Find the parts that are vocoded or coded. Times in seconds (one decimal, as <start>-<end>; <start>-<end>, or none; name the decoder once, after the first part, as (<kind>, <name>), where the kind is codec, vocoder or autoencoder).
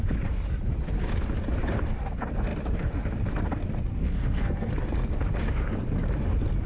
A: 3.9-4.7 (codec, SNAC)